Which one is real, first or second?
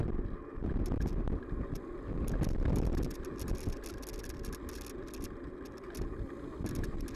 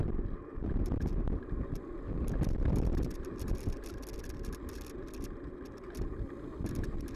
first